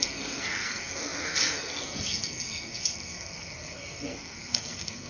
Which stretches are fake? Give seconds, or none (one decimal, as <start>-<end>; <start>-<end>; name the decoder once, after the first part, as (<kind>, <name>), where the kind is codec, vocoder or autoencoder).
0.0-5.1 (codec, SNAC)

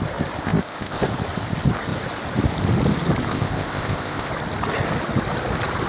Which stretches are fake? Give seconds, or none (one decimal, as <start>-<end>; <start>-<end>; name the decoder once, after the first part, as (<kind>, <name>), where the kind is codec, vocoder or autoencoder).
0.4-1.0 (codec, ZipCodec); 3.3-4.3

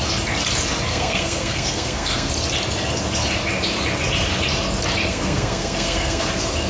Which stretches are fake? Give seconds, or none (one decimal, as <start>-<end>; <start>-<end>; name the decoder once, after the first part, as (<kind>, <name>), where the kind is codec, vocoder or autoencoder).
0.9-2.3 (codec, SNAC); 5.1-6.3